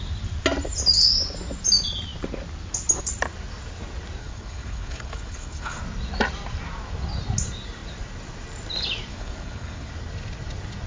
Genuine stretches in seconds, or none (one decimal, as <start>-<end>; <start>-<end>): 0.0-4.2; 5.8-9.1; 9.9-10.9